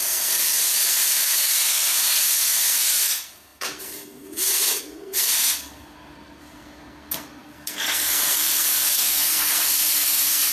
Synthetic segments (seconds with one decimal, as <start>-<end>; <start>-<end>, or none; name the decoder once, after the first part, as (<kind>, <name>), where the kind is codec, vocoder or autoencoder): 0.0-10.5 (codec, SNAC)